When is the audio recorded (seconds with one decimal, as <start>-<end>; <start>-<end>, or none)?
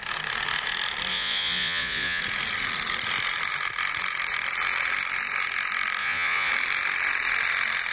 0.0-1.1; 2.2-6.0; 6.5-7.9